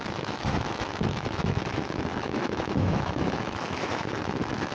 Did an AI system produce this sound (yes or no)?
yes